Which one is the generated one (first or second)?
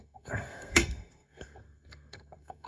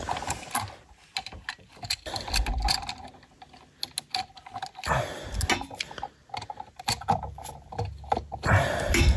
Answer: first